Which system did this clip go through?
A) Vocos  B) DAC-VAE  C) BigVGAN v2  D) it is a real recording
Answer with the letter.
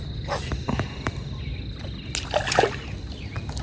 D